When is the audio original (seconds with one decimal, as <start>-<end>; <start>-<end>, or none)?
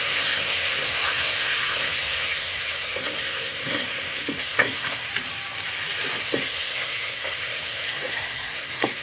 5.1-6.2